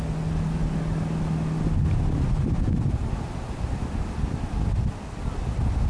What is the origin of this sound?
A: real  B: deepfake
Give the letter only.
A